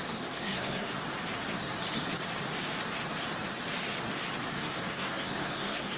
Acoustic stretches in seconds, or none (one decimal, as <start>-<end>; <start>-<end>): 0.9-4.5